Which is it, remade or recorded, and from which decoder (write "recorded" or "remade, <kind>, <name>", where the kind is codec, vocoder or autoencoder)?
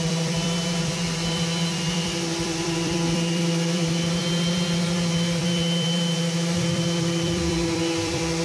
remade, vocoder, BigVGAN v2